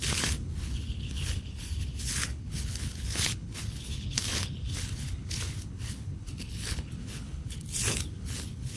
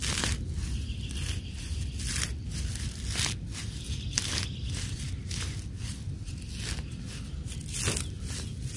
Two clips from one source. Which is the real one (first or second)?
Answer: second